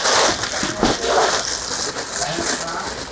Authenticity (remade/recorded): recorded